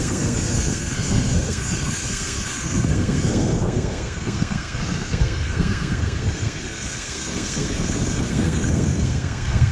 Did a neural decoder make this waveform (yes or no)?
yes